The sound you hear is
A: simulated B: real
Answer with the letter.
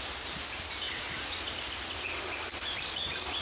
B